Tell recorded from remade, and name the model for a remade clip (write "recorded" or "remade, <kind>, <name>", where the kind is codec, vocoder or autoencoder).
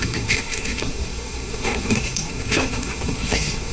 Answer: remade, codec, SNAC